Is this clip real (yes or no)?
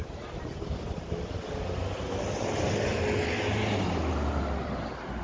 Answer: yes